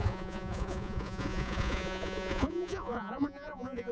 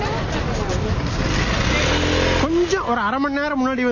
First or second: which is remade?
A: first